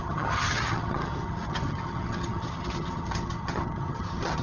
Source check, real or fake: fake